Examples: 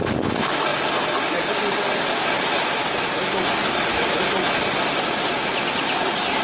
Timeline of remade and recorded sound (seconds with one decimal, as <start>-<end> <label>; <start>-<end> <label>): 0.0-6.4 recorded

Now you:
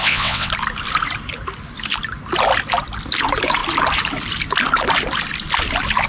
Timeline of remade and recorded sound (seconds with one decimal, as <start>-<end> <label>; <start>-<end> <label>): 0.0-0.5 remade; 0.5-6.1 recorded

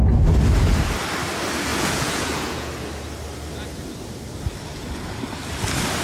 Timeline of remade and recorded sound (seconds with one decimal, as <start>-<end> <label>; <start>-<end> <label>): 0.0-1.7 recorded; 1.7-2.7 remade; 2.7-4.7 recorded; 4.7-5.2 remade; 5.2-6.0 recorded

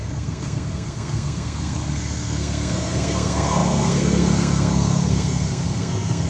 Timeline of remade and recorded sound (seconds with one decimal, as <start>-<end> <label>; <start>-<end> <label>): 0.0-6.3 remade

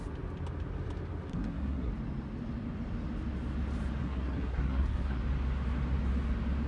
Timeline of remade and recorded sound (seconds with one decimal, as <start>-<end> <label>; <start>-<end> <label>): 0.0-1.3 recorded; 1.3-1.9 remade; 1.9-4.0 recorded; 4.0-5.2 remade; 5.2-6.7 recorded